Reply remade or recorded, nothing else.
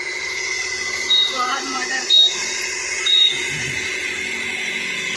remade